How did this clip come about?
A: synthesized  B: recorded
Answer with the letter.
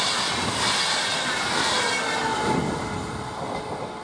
B